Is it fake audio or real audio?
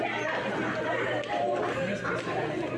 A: real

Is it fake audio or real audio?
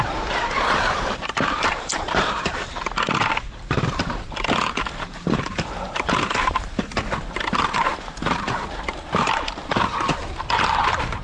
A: fake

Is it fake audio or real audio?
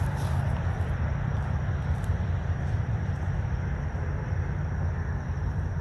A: fake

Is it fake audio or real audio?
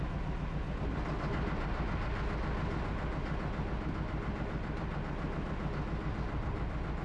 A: real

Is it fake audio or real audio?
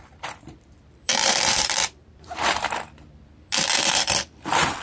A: fake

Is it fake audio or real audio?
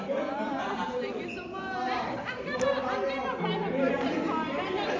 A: fake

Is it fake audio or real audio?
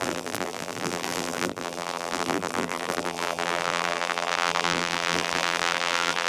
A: fake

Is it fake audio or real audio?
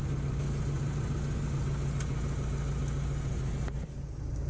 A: real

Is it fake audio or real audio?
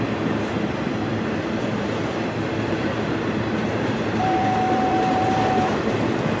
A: fake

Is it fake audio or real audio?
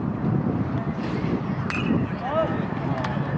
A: real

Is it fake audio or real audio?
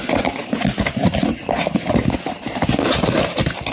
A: real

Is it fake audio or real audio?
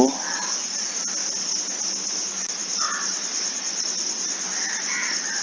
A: fake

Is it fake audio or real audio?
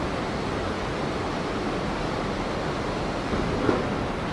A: real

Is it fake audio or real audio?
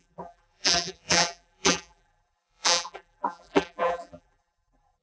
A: fake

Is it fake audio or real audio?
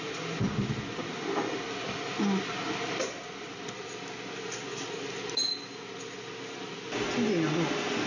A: real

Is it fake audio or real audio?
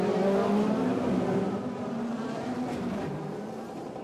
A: fake